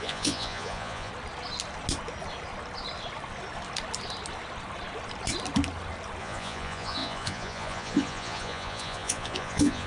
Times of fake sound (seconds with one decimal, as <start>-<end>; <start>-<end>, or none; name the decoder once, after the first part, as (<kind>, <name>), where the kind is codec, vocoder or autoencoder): 0.0-1.1 (vocoder, Vocos); 6.2-9.9